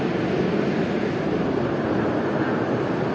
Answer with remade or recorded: recorded